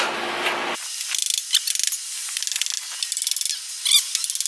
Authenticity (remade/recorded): recorded